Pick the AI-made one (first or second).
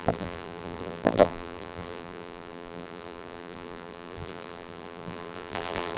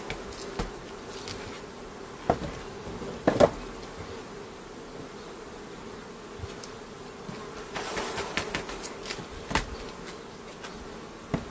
first